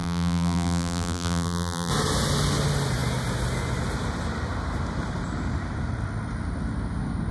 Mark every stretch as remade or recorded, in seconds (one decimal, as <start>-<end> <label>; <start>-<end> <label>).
0.0-1.9 remade; 1.9-7.3 recorded